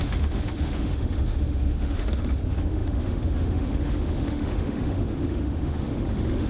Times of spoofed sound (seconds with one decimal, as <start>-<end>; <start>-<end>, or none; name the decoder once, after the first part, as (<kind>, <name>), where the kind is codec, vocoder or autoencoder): 0.0-6.5 (autoencoder, DAC-VAE)